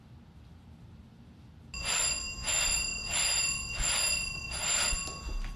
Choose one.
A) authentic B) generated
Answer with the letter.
A